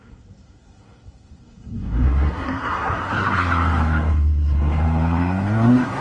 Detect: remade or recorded remade